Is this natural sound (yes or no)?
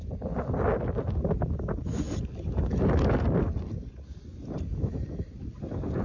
yes